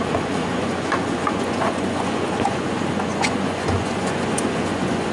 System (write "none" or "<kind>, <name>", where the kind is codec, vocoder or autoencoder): vocoder, Vocos